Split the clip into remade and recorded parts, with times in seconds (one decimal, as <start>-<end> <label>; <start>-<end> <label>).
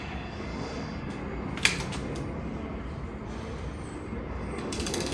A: 0.0-1.2 remade; 1.2-4.3 recorded; 4.3-5.1 remade